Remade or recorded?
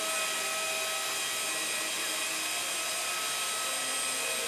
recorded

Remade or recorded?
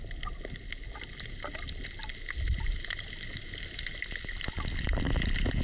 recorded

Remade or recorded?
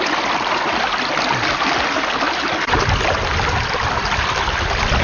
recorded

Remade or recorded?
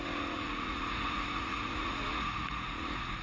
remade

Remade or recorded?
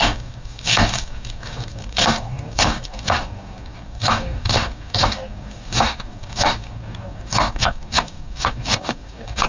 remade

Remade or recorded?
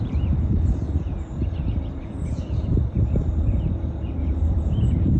remade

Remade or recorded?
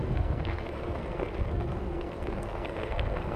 remade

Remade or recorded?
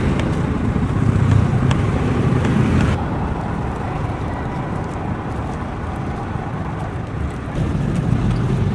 recorded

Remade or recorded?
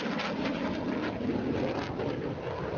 recorded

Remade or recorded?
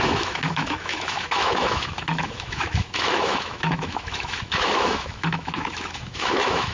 remade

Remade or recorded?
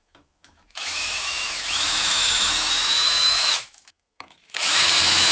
remade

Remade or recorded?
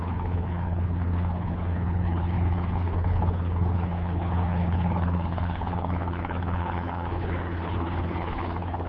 remade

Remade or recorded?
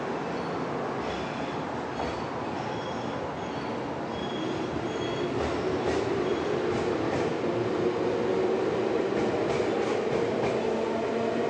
recorded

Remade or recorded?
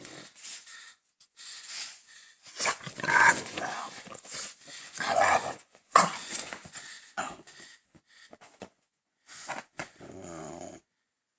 remade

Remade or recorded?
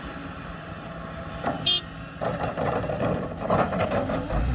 recorded